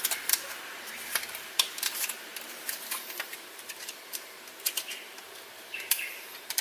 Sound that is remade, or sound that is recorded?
remade